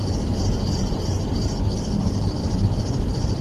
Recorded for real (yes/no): no